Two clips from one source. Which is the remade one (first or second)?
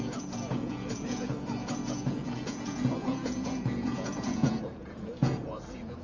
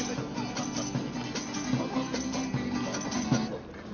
first